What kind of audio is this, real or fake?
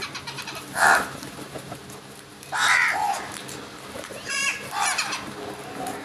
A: fake